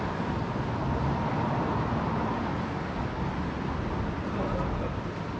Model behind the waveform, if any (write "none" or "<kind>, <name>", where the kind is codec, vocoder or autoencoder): none